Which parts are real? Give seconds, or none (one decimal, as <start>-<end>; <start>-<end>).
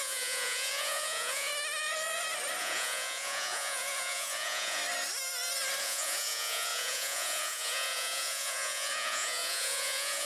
1.5-2.6; 4.8-5.8